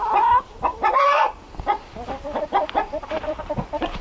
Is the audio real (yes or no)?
no